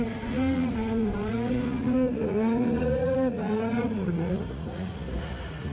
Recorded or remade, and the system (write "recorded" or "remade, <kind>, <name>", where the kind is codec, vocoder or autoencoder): remade, vocoder, Vocos